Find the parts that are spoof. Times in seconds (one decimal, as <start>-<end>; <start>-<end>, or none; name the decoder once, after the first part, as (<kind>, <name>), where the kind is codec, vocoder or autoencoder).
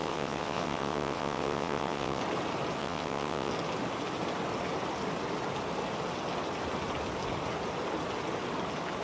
0.0-2.2 (vocoder, WaveNeXt); 2.8-3.5